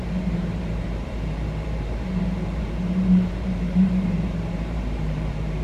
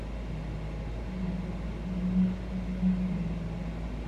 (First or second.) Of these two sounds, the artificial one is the first